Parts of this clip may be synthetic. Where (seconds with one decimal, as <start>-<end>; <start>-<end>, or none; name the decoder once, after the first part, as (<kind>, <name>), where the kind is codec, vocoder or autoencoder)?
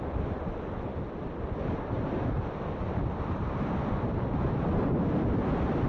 none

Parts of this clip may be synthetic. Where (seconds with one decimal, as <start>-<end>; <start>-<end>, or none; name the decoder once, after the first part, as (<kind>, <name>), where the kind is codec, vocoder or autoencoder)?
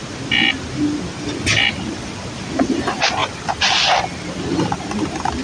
none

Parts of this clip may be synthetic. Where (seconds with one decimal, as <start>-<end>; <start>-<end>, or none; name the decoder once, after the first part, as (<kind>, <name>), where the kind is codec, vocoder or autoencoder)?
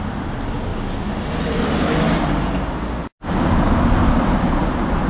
none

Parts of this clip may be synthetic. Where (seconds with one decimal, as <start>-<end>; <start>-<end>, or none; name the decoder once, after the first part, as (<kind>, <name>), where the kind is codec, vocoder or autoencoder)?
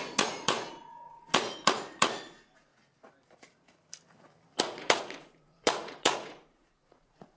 0.0-2.7 (vocoder, Vocos); 4.6-7.4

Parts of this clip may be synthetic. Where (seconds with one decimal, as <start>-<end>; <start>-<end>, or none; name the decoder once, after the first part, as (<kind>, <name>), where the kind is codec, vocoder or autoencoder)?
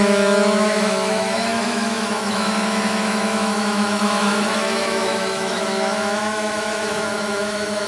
0.0-7.9 (autoencoder, DAC-VAE)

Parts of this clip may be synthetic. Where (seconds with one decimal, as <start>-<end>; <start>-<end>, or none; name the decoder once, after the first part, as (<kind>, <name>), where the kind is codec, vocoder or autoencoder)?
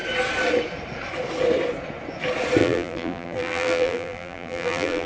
2.6-5.1 (vocoder, BigVGAN v2)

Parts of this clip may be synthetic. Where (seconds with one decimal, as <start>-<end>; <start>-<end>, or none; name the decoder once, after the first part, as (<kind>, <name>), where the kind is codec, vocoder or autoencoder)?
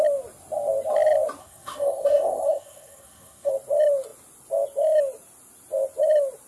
1.4-3.5 (codec, SNAC)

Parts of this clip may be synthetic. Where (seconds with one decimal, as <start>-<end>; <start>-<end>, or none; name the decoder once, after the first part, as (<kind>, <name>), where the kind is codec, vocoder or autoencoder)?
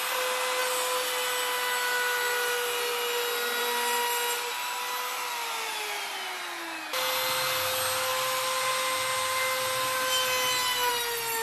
none